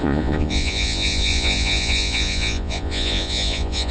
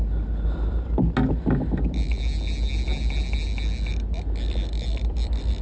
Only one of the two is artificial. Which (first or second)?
first